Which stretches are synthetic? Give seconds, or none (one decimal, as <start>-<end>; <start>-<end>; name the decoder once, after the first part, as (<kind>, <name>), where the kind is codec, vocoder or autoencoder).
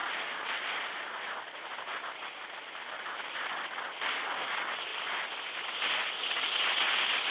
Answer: none